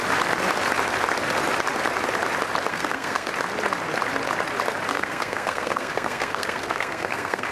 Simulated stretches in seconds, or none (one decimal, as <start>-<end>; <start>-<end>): 2.7-3.3; 4.9-7.5